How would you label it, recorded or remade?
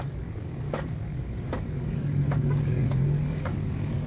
remade